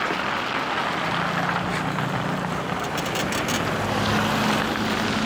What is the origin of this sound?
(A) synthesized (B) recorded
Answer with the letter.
B